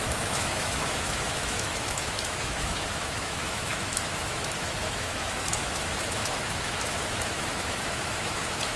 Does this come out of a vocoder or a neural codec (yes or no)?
yes